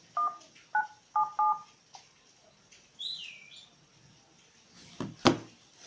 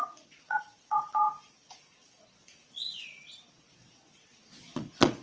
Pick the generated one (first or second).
second